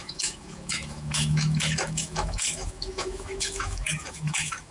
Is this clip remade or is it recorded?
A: remade